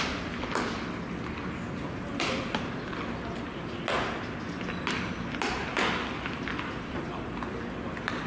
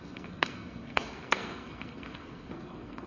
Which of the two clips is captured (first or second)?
first